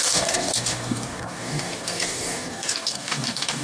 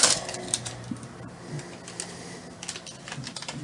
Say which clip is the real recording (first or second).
second